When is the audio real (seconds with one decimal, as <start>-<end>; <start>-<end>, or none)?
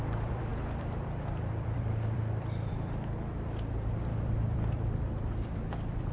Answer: none